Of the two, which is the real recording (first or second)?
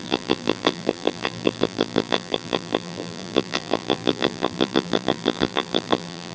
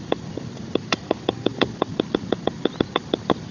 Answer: second